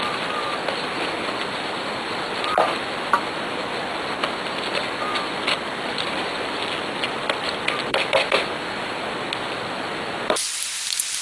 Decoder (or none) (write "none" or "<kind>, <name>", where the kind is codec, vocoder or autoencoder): none